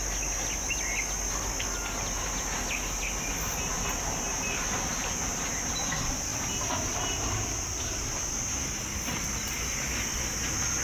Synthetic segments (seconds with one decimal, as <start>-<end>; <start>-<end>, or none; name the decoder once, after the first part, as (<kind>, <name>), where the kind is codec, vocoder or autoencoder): none